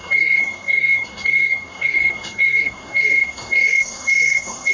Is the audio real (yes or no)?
no